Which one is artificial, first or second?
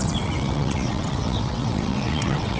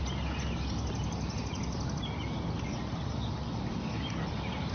first